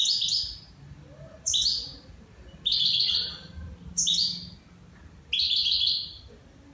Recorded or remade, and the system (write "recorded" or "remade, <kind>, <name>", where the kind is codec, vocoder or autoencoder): recorded